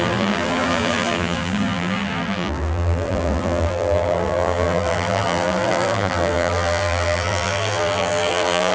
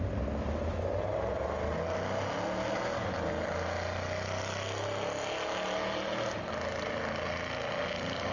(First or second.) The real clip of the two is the second